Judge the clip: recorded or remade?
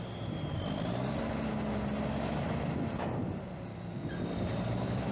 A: recorded